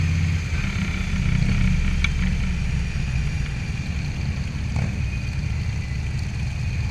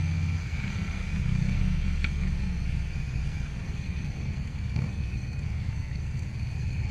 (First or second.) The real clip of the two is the first